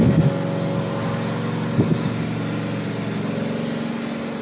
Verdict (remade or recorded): recorded